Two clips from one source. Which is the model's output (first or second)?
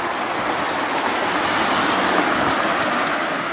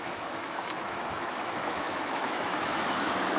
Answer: second